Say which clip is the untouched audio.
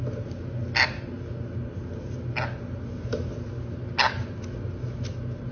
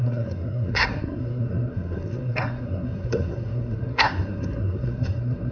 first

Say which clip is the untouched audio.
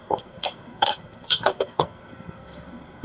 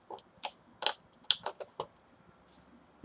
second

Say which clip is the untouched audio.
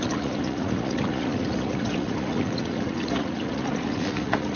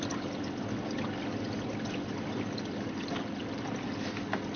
second